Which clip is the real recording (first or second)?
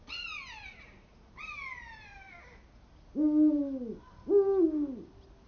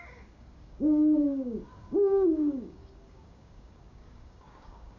first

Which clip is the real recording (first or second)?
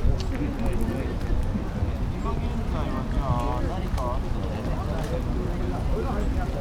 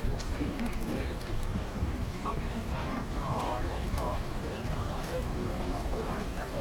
first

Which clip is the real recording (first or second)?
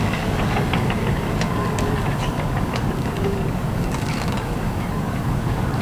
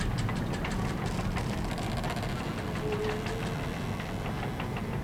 second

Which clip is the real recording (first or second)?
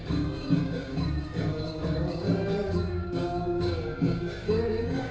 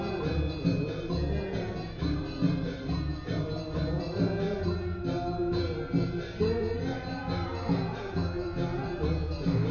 second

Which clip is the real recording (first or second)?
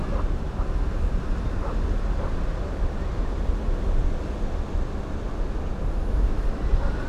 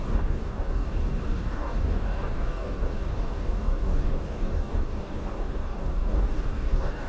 first